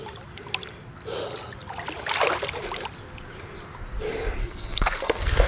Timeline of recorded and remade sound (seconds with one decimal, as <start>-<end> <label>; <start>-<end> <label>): 0.0-4.4 recorded; 4.4-5.5 remade